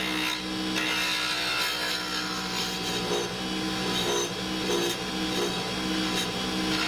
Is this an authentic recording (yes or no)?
yes